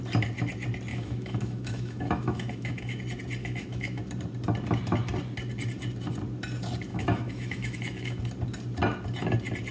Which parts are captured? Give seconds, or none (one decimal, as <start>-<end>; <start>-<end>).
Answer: 0.0-0.9; 3.0-3.4; 4.0-6.9; 8.2-9.7